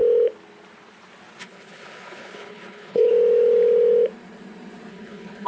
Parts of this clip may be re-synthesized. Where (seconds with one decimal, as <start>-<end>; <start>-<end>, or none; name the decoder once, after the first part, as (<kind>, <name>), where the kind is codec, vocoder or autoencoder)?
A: 1.4-3.1 (codec, HILCodec); 4.9-5.5